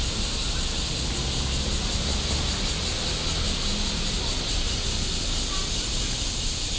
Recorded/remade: recorded